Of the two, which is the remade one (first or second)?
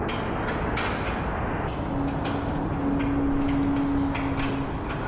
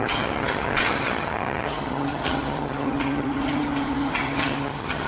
second